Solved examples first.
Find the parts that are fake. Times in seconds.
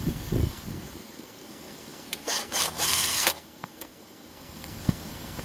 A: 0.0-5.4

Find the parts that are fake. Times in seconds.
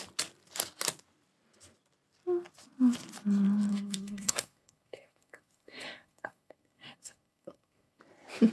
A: 3.7-8.0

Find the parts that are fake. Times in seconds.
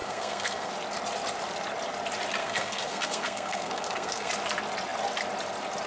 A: 0.0-0.7; 2.4-4.3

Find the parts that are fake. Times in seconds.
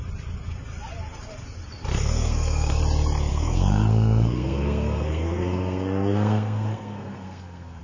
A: 1.9-2.8; 3.3-7.8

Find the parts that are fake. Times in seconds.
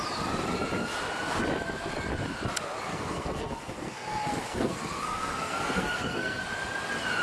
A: 2.9-6.4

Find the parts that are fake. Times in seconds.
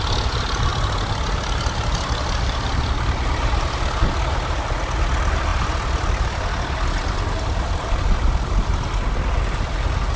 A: none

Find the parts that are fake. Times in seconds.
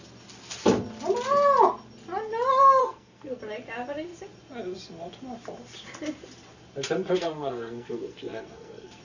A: 2.8-3.4; 7.1-9.0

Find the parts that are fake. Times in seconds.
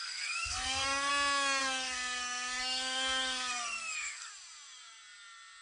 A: 0.0-1.1; 1.6-4.3